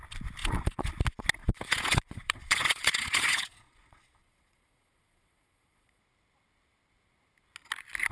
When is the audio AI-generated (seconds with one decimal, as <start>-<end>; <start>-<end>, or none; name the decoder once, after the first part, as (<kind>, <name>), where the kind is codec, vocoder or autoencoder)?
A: 0.4-0.9 (vocoder, Vocos); 1.4-6.0